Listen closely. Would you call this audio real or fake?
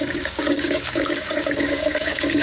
fake